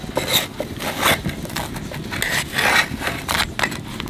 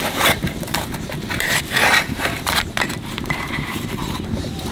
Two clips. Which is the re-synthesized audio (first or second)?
second